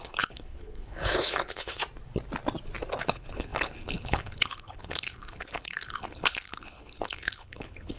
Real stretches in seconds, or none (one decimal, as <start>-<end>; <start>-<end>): 1.8-3.0

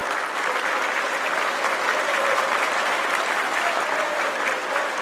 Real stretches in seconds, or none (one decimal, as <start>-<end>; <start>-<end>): 0.0-1.9

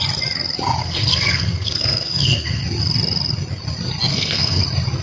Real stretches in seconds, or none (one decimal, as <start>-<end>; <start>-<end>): 0.0-0.8; 2.6-4.1; 4.6-5.0

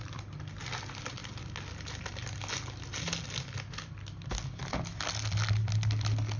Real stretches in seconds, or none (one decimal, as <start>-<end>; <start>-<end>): 0.0-6.4

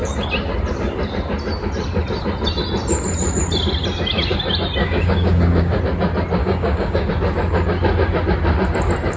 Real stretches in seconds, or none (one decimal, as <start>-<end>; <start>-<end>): 0.0-4.8; 5.8-6.4; 7.1-9.2

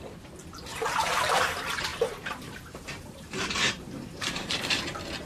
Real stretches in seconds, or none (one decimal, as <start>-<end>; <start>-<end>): 0.0-0.7; 1.4-1.9; 4.8-5.3

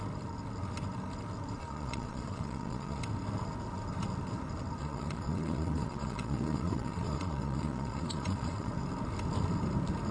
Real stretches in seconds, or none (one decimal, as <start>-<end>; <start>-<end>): 0.0-1.6; 3.0-4.8; 8.7-10.1